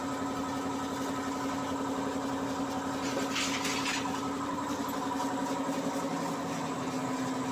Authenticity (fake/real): real